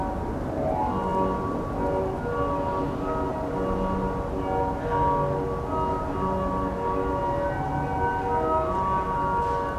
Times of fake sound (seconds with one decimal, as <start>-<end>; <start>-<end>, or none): none